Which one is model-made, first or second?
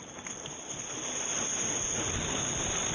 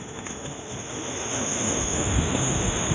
second